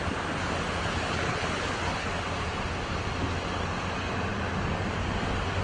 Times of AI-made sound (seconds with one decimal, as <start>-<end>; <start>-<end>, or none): 0.8-2.1